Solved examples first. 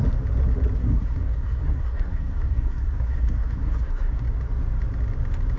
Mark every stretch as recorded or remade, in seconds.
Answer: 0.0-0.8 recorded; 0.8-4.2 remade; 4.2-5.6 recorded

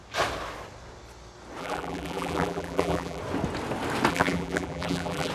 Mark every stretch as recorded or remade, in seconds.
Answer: 0.0-1.6 recorded; 1.6-3.2 remade; 3.2-4.1 recorded; 4.1-5.3 remade

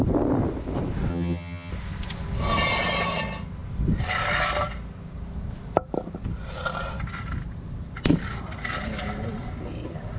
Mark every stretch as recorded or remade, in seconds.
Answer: 0.0-1.1 recorded; 1.1-1.7 remade; 1.7-10.2 recorded

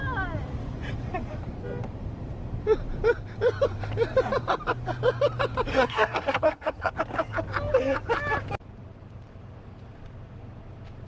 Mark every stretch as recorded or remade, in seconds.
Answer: 0.0-5.7 recorded; 5.7-6.9 remade; 6.9-11.1 recorded

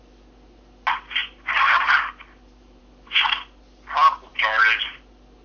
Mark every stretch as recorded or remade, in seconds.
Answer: 0.0-5.4 recorded

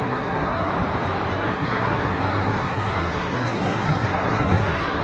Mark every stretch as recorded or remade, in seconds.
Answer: 0.0-0.7 remade; 0.7-1.3 recorded; 1.3-5.0 remade

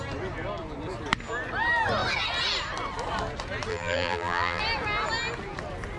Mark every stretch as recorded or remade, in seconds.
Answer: 0.0-3.7 recorded; 3.7-4.6 remade; 4.6-6.0 recorded